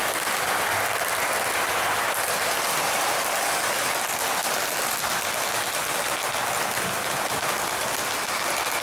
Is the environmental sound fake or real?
real